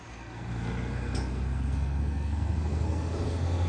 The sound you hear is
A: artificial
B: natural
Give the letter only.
A